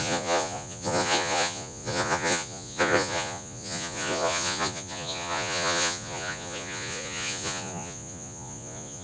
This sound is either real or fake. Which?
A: fake